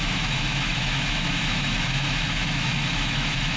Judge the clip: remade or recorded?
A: remade